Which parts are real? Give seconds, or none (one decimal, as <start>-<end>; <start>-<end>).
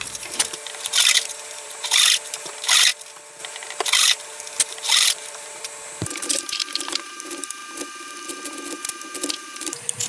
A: 2.9-3.4; 7.6-9.3